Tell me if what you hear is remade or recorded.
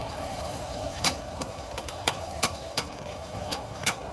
remade